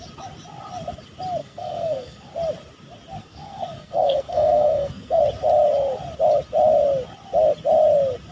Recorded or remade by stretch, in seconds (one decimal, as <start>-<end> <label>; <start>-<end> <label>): 0.0-1.4 recorded; 1.4-2.3 remade; 2.3-3.2 recorded; 3.2-5.2 remade; 5.2-8.3 recorded